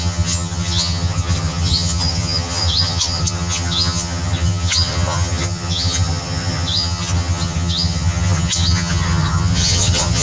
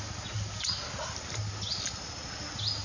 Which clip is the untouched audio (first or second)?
second